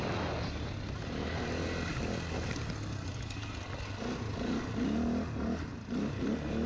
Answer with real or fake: real